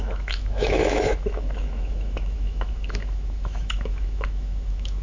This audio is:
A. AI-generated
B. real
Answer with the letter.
A